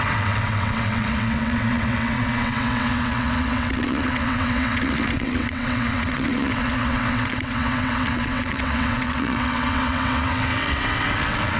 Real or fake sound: fake